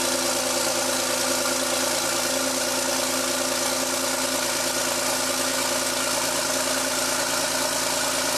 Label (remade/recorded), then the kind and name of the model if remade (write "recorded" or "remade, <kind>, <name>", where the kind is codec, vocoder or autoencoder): recorded